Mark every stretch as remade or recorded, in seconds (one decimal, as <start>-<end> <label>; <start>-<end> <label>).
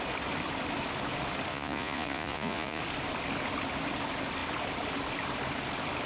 0.0-1.5 recorded; 1.5-2.8 remade; 2.8-6.1 recorded